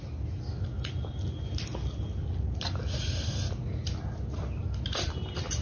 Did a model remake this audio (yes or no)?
no